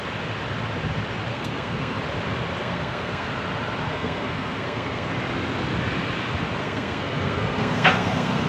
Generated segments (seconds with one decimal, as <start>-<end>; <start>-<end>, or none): 1.3-2.0; 2.6-3.3; 3.9-5.1; 6.6-8.5